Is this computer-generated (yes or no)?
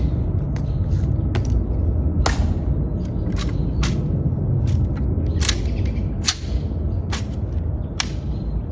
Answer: no